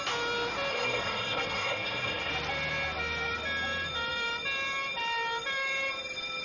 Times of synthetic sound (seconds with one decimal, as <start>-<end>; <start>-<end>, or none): 0.7-2.3